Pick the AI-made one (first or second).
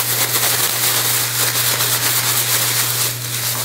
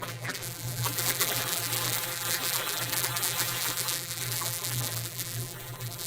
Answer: second